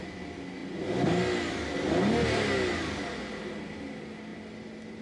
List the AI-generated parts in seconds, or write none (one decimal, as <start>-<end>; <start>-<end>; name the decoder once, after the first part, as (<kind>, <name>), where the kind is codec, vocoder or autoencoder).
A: none